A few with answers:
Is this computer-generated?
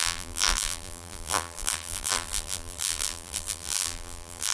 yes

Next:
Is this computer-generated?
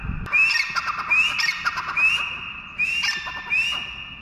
no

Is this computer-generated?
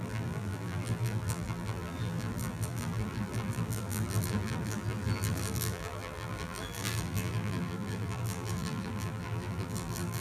yes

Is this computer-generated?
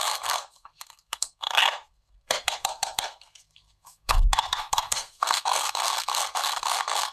yes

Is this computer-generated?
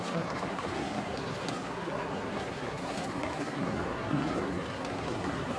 yes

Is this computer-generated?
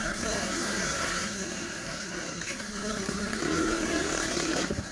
yes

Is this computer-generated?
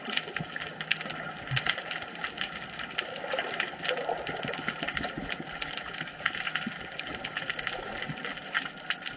no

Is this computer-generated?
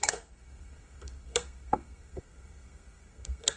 yes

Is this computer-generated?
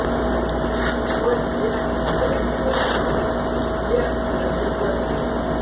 no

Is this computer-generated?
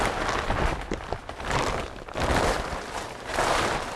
no